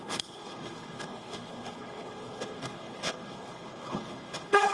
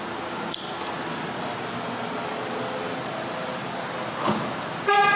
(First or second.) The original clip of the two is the second